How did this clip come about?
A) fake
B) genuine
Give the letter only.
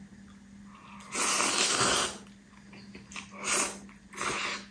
B